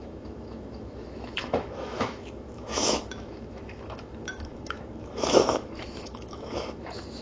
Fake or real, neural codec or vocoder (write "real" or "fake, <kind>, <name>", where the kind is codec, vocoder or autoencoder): fake, autoencoder, DAC-VAE